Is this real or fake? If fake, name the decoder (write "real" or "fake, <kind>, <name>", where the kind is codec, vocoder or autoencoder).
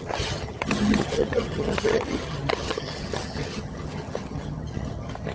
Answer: fake, vocoder, HiFi-GAN